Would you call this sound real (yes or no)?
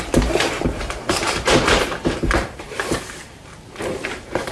no